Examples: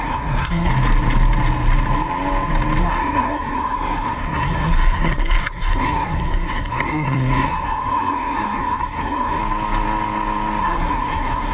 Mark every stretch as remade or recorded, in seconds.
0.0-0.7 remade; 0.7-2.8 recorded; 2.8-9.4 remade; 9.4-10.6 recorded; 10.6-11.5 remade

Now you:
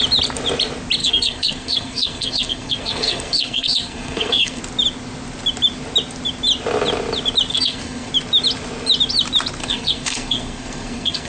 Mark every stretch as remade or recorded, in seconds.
0.0-1.0 recorded; 1.0-4.6 remade; 4.6-7.5 recorded; 7.5-8.1 remade; 8.1-9.6 recorded; 9.6-11.3 remade

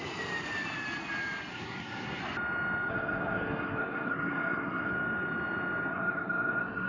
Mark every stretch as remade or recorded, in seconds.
0.0-1.5 recorded; 1.5-2.2 remade; 2.2-2.9 recorded; 2.9-4.9 remade; 4.9-5.9 recorded; 5.9-6.9 remade